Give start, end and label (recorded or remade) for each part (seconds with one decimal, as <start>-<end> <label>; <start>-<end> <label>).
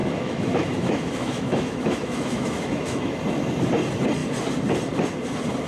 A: 0.0-3.2 remade; 3.2-5.7 recorded